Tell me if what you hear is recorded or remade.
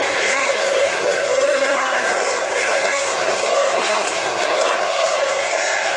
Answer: remade